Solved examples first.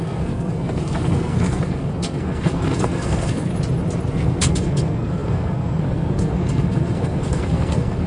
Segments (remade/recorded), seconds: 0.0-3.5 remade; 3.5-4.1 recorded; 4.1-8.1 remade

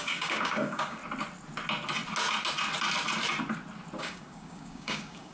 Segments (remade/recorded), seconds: 0.0-1.0 remade; 1.0-4.0 recorded; 4.0-5.3 remade

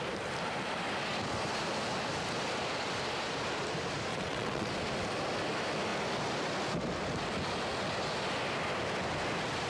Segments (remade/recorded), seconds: 0.0-4.1 recorded; 4.1-4.7 remade; 4.7-9.7 recorded

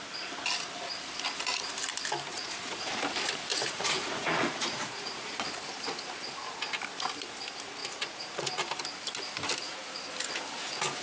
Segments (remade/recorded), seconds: 0.0-2.3 recorded; 2.3-2.9 remade; 2.9-3.5 recorded; 3.5-5.4 remade; 5.4-7.8 recorded; 7.8-8.5 remade; 8.5-11.0 recorded

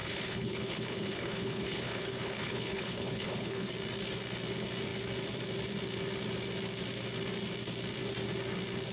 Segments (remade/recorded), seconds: 0.0-3.7 remade; 3.7-8.9 recorded

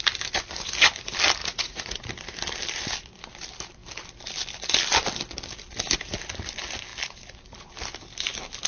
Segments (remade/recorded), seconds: 0.0-1.4 recorded; 1.4-2.1 remade; 2.1-8.7 recorded

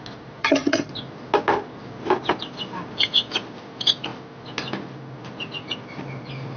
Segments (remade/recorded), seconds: 0.0-0.4 recorded; 0.4-0.9 remade; 0.9-6.6 recorded

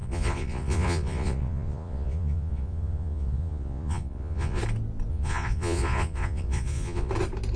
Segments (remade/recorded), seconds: 0.0-4.6 remade; 4.6-5.1 recorded; 5.1-7.1 remade; 7.1-7.6 recorded